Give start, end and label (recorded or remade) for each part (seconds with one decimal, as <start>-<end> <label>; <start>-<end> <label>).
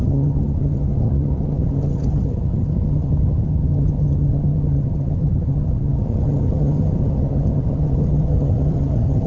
0.0-9.3 remade